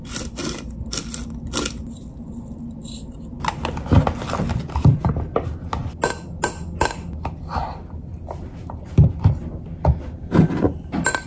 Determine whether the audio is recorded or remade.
recorded